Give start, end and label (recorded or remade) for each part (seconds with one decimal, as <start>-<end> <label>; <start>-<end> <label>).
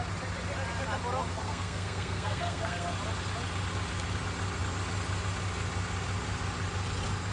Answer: 0.0-1.3 recorded; 1.3-2.9 remade; 2.9-7.3 recorded